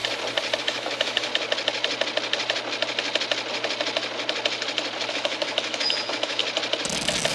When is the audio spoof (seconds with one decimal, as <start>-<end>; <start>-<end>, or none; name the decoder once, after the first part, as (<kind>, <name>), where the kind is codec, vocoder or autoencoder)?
0.6-1.3 (autoencoder, DAC-VAE); 5.1-6.4

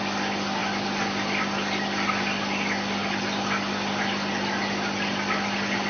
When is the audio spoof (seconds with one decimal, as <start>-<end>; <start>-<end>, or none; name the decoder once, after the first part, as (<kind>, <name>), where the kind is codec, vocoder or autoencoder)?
none

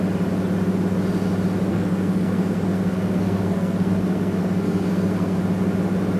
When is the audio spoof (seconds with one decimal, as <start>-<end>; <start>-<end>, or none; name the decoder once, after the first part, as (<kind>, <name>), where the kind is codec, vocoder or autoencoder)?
1.7-5.4 (codec, SNAC)

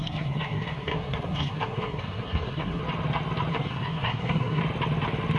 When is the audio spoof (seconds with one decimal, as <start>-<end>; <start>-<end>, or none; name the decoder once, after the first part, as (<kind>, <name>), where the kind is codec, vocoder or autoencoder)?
0.0-2.8 (codec, SNAC); 3.5-4.6

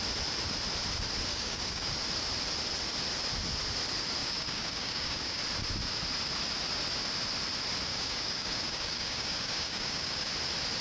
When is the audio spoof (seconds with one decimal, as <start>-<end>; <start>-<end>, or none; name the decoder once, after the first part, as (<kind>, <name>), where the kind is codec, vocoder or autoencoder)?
1.3-1.9 (codec, DAC); 4.2-5.4; 7.9-10.3

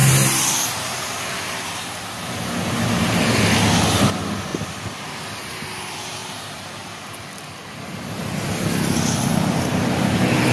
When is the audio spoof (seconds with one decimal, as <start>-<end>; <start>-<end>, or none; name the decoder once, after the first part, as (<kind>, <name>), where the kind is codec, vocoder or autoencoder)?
0.0-3.4 (vocoder, BigVGAN v2); 6.2-7.0

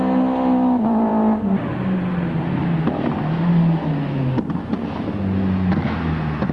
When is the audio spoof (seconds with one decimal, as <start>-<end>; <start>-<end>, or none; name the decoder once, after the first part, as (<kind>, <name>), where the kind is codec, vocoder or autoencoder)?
none